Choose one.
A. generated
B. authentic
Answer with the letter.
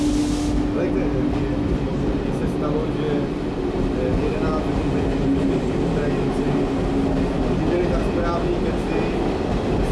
B